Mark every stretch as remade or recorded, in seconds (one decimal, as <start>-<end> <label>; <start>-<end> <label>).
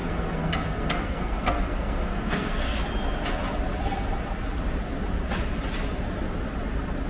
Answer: 0.0-2.8 remade; 2.8-7.1 recorded